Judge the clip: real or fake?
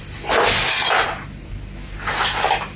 real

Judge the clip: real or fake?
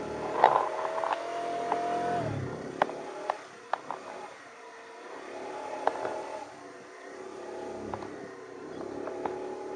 real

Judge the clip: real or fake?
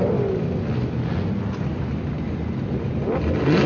real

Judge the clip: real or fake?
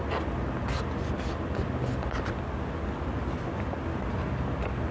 real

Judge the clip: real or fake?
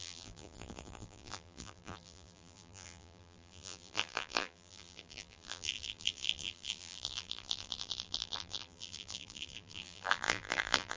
fake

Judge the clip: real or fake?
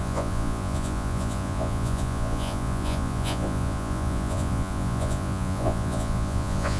fake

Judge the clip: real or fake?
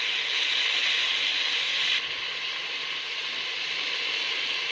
real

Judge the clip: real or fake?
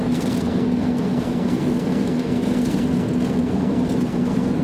fake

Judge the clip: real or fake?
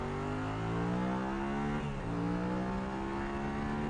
real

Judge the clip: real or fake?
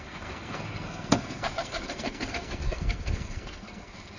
fake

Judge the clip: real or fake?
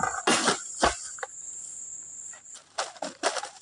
real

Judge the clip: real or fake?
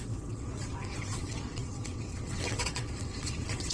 fake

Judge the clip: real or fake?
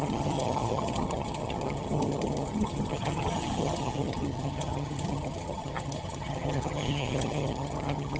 fake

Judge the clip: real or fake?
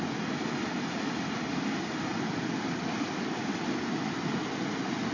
real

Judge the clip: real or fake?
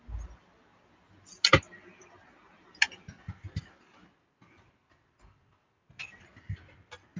real